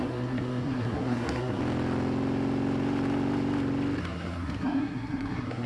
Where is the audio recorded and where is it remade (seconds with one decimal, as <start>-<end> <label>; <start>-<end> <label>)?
0.0-1.6 remade; 1.6-4.0 recorded; 4.0-5.7 remade